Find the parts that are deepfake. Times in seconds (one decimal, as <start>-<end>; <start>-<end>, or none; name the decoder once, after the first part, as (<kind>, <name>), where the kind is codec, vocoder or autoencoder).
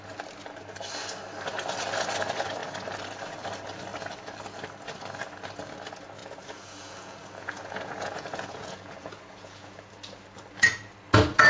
6.2-9.9 (vocoder, Vocos)